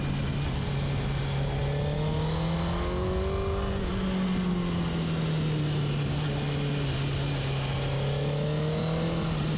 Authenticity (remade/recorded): recorded